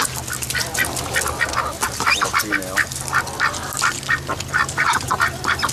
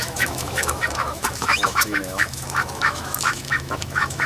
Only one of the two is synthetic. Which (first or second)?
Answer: second